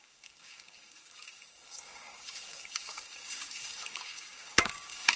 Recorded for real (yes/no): no